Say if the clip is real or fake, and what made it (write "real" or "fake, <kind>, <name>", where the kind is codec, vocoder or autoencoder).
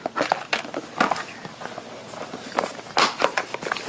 real